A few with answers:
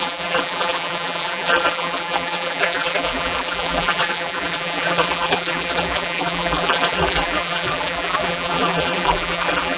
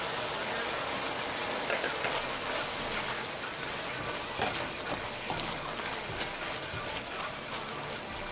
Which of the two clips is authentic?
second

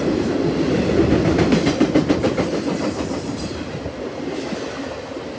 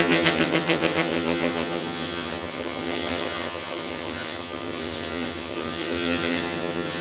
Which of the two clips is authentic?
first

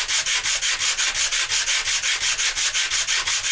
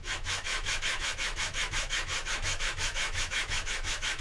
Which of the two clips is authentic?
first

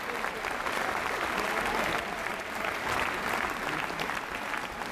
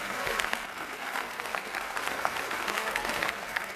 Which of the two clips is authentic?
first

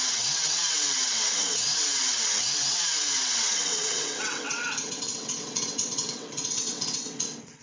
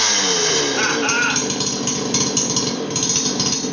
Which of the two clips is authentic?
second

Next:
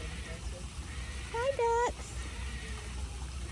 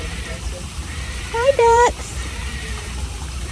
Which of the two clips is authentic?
first